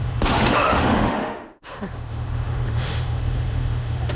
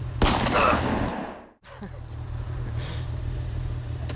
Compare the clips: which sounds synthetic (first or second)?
first